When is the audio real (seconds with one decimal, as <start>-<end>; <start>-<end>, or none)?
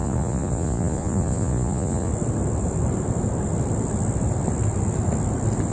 2.1-5.7